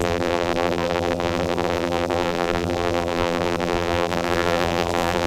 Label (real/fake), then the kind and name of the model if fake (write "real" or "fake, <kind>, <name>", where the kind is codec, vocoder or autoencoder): fake, vocoder, BigVGAN v2